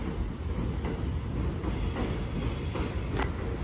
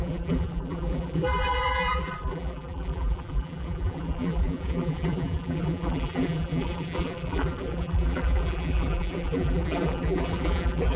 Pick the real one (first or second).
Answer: first